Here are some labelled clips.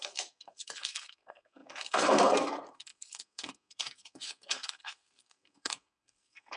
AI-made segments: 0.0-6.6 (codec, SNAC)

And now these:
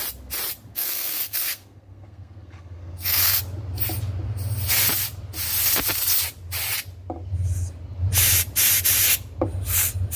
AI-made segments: 0.7-3.4 (codec, SNAC)

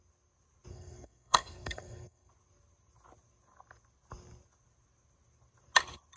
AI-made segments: 0.7-2.3 (codec, SNAC)